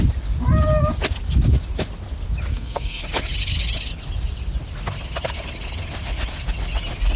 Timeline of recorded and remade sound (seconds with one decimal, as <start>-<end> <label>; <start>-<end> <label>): 0.0-2.5 recorded; 2.5-3.0 remade; 3.0-7.2 recorded